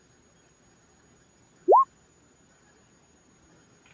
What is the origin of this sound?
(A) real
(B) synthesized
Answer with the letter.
A